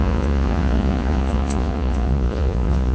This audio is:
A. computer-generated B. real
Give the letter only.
A